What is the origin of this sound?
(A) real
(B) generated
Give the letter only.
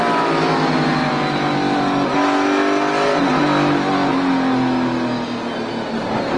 A